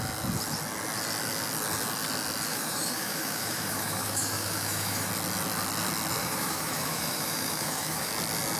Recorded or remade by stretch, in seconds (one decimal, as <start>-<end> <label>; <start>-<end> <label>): 0.0-2.5 recorded; 2.5-5.1 remade; 5.1-6.2 recorded; 6.2-8.1 remade; 8.1-8.6 recorded